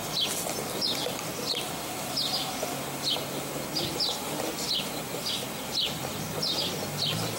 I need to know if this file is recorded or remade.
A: recorded